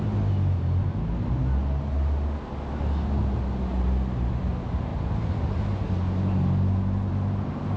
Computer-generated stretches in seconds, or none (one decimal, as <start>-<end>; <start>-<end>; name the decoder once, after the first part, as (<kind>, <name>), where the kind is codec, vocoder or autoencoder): none